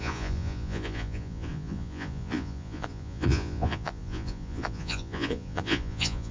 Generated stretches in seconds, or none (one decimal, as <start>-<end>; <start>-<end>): 0.0-6.3